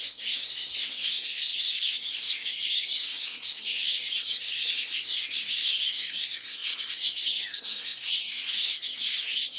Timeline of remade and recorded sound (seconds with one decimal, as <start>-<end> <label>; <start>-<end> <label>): 0.0-9.6 remade